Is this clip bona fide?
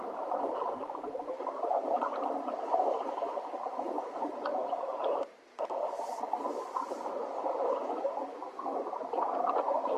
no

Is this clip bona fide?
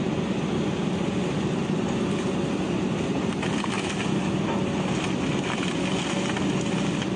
yes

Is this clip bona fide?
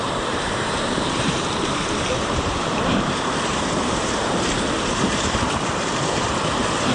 no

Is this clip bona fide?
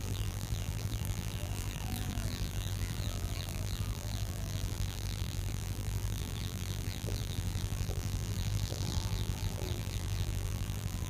no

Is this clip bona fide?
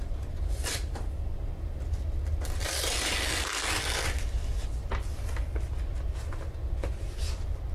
yes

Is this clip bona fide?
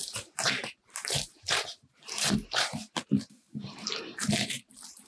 no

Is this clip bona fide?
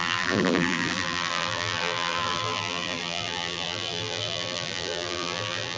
no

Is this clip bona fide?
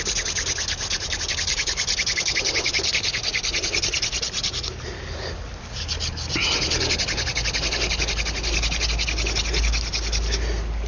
yes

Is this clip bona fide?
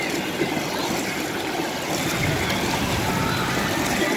yes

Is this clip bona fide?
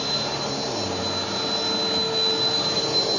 yes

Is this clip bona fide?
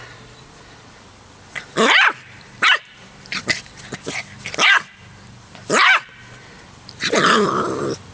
no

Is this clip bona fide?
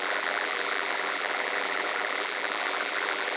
no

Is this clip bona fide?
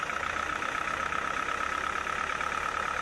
yes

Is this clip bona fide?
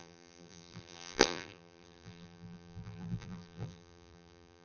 no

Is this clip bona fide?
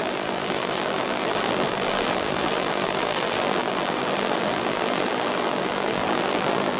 no